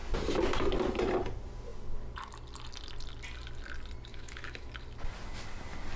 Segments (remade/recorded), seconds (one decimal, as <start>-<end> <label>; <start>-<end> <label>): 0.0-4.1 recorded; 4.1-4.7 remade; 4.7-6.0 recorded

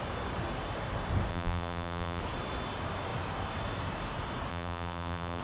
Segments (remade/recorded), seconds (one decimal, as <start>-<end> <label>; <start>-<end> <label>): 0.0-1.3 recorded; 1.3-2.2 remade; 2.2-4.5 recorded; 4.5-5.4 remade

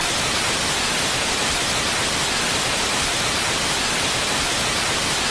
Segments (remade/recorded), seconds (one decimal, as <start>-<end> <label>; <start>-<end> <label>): 0.0-5.3 recorded

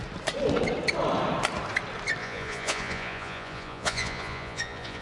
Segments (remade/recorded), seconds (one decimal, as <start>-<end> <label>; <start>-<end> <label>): 0.0-2.2 recorded; 2.2-5.0 remade

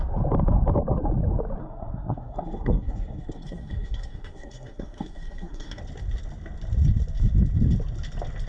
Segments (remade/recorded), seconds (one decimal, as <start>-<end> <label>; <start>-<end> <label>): 0.0-1.6 recorded; 1.6-5.8 remade; 5.8-8.5 recorded

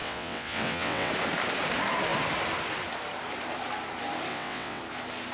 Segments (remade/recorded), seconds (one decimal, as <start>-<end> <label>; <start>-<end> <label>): 0.0-1.1 remade; 1.1-4.3 recorded; 4.3-4.8 remade; 4.8-5.3 recorded

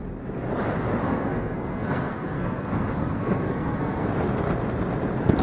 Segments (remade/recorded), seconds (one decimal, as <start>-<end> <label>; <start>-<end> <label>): 0.0-1.0 recorded; 1.0-4.1 remade; 4.1-5.4 recorded